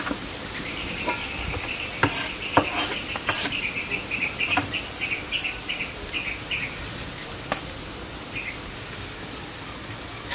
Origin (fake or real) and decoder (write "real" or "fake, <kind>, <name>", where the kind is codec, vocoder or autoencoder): real